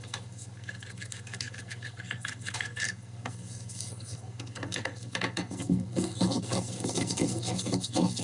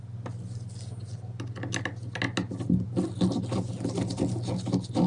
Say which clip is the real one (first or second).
second